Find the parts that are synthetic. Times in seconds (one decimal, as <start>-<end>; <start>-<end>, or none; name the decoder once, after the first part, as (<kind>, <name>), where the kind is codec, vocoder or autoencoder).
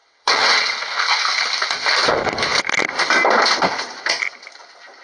0.0-1.0 (vocoder, WaveNeXt)